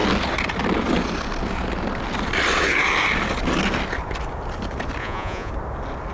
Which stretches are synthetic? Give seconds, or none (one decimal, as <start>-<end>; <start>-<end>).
5.0-5.5